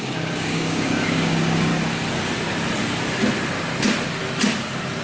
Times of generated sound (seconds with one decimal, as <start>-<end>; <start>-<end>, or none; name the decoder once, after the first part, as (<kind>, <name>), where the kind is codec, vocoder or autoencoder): 0.0-1.7 (codec, DAC)